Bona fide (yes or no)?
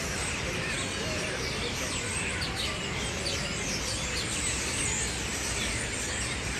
yes